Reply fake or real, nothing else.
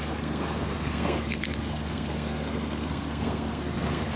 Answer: fake